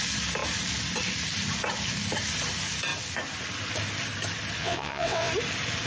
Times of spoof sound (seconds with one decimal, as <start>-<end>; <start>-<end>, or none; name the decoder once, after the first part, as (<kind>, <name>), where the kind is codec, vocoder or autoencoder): 4.6-5.3 (vocoder, WaveNeXt)